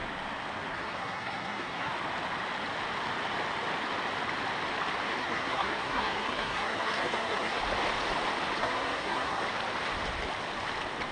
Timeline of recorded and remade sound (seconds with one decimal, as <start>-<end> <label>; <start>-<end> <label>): 0.0-0.7 recorded; 0.7-1.9 remade; 1.9-5.2 recorded; 5.2-7.6 remade; 7.6-8.6 recorded; 8.6-9.4 remade; 9.4-11.1 recorded